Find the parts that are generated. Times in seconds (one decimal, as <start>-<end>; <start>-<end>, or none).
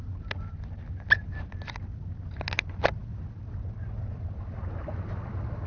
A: none